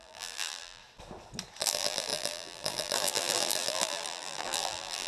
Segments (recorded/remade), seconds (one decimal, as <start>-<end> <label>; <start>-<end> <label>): 0.0-0.8 remade; 0.8-1.6 recorded; 1.6-5.1 remade